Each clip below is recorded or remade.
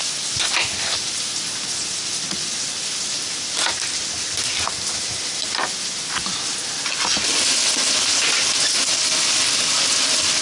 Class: recorded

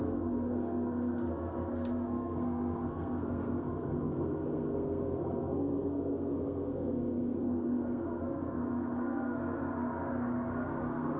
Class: remade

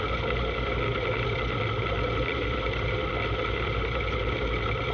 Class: recorded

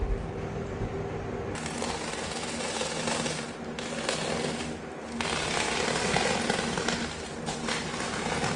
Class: recorded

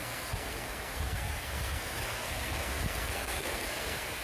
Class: remade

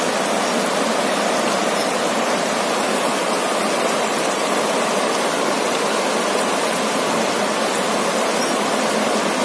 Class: recorded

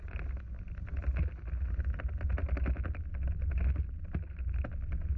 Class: recorded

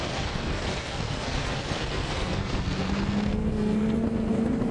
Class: remade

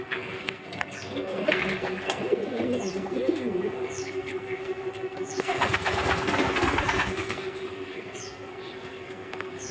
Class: remade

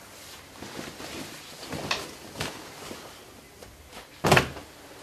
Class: recorded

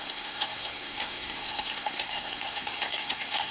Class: remade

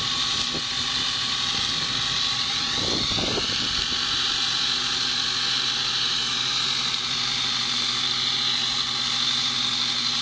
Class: recorded